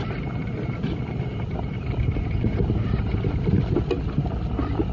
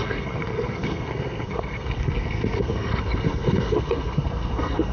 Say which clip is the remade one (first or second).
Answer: second